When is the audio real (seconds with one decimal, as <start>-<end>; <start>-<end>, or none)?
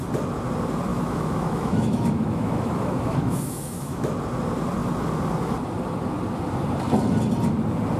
0.0-0.9; 4.1-8.0